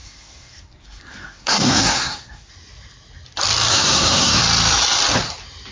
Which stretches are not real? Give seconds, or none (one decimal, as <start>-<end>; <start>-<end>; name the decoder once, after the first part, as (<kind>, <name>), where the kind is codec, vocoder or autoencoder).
0.0-2.5 (codec, SNAC); 3.7-4.4